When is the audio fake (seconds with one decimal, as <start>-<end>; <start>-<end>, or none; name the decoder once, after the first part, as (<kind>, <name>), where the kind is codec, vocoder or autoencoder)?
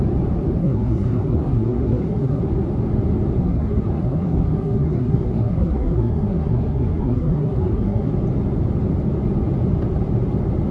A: 0.6-2.4 (codec, SNAC); 3.4-8.1